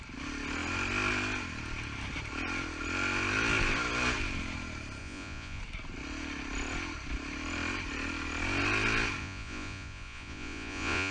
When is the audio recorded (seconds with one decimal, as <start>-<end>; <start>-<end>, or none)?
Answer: 0.0-5.0; 5.6-9.2